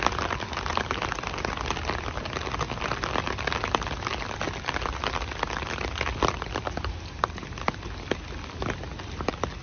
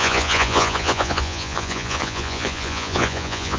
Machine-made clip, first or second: second